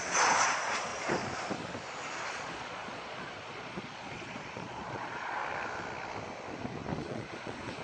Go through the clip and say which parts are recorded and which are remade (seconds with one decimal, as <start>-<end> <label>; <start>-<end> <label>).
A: 0.0-0.9 remade; 0.9-2.3 recorded; 2.3-5.4 remade; 5.4-7.0 recorded; 7.0-7.8 remade